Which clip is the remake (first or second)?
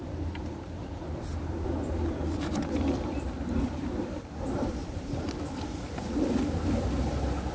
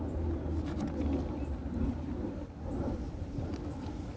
first